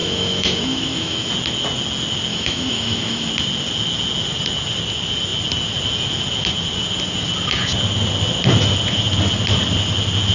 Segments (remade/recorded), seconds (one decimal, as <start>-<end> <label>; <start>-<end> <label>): 0.0-1.3 remade; 1.3-2.3 recorded; 2.3-3.3 remade; 3.3-10.3 recorded